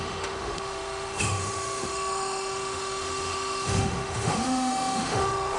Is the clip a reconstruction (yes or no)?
yes